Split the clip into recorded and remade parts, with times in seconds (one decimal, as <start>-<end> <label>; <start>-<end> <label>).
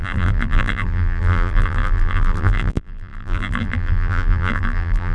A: 0.0-5.1 remade